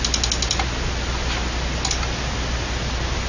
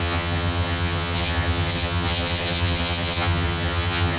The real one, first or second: first